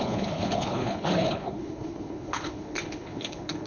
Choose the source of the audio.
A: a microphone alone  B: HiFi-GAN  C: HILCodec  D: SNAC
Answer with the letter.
C